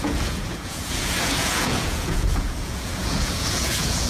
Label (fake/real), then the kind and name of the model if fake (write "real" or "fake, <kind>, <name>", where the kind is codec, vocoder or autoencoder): fake, vocoder, Vocos